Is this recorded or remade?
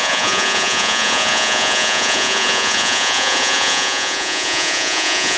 remade